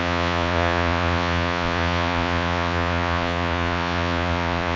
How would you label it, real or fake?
fake